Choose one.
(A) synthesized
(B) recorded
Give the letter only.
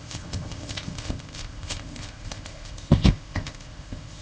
A